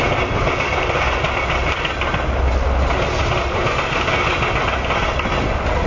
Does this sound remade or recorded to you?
recorded